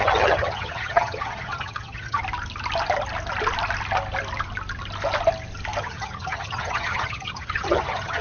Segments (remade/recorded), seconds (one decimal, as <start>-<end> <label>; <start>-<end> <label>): 0.0-2.2 remade; 2.2-5.8 recorded; 5.8-8.2 remade